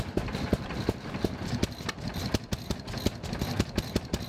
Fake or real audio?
real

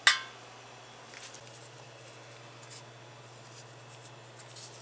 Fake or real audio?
real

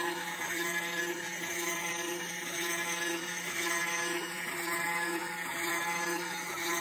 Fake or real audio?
real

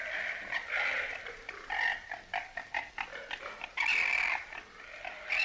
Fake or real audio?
real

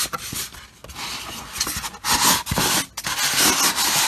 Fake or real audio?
real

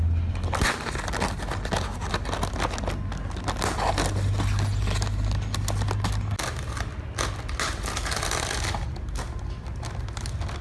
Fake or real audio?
real